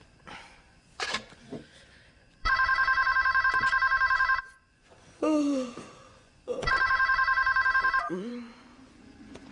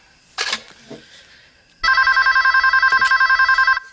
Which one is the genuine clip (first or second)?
second